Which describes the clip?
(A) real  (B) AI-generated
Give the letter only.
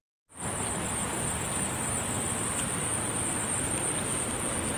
A